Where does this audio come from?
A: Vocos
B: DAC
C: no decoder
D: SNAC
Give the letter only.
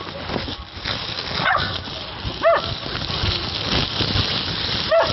C